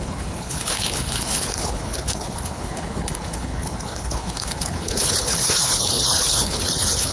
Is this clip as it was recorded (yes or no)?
no